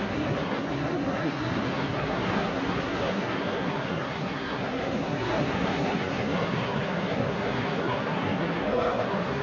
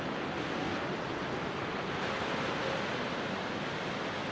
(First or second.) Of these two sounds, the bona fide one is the second